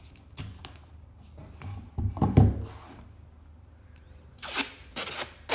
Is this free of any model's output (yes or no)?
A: yes